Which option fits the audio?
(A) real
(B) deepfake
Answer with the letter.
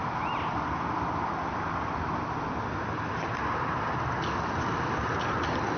A